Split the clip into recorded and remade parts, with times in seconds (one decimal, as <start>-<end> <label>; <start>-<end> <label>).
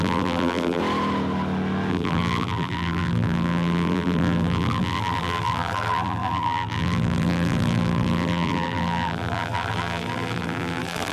0.0-0.8 remade; 0.8-1.9 recorded; 1.9-11.1 remade